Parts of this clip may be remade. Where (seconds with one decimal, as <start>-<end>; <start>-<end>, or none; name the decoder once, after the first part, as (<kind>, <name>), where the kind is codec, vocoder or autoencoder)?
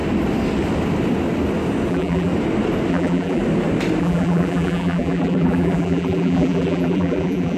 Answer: 1.9-2.3 (vocoder, BigVGAN v2); 2.9-3.4; 4.0-7.6